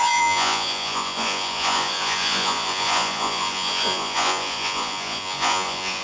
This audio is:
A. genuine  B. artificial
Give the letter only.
B